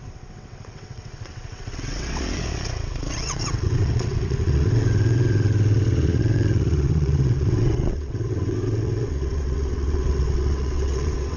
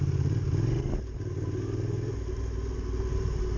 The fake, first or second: first